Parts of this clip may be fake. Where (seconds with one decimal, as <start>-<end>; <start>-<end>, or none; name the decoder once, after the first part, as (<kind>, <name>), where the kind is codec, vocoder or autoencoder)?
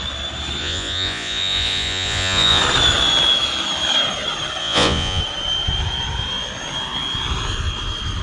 0.6-2.6 (vocoder, Vocos); 4.6-5.2